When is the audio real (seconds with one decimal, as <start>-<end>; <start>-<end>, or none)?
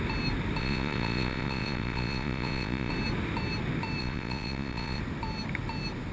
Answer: 0.0-0.6; 2.9-4.0; 5.0-6.1